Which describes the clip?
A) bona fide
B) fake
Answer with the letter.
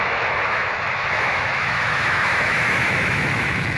B